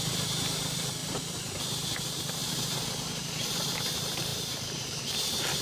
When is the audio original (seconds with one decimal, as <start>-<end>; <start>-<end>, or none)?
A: none